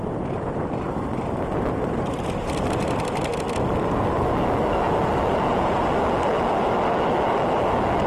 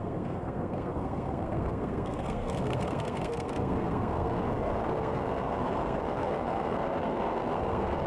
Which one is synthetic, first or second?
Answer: second